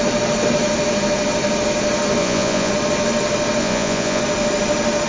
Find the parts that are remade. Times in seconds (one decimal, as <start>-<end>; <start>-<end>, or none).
2.2-2.7; 3.6-4.2